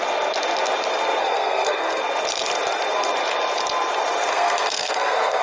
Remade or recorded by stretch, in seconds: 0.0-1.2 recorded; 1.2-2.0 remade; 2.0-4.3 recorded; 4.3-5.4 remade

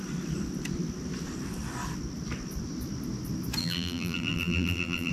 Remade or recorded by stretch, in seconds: 0.0-3.6 recorded; 3.6-5.1 remade

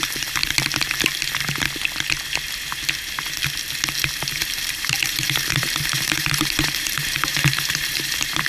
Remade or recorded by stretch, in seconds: 0.0-0.4 remade; 0.4-4.1 recorded; 4.1-8.5 remade

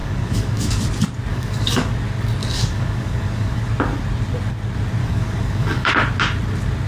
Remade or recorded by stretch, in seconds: 0.0-0.8 remade; 0.8-1.3 recorded; 1.3-1.9 remade; 1.9-2.4 recorded; 2.4-3.7 remade; 3.7-5.0 recorded; 5.0-5.9 remade; 5.9-6.9 recorded

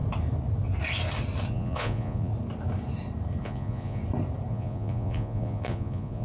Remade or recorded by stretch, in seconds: 0.0-1.5 recorded; 1.5-2.3 remade; 2.3-3.4 recorded; 3.4-4.0 remade; 4.0-4.5 recorded; 4.5-6.2 remade

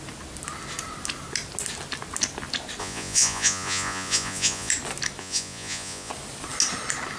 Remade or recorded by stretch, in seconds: 0.0-2.8 recorded; 2.8-4.7 remade; 4.7-5.2 recorded; 5.2-6.1 remade; 6.1-7.2 recorded

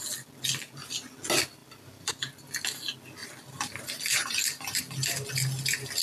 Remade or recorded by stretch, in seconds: 0.0-1.6 recorded; 1.6-2.1 remade; 2.1-3.2 recorded; 3.2-4.8 remade; 4.8-6.0 recorded